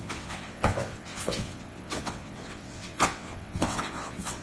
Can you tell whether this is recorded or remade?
remade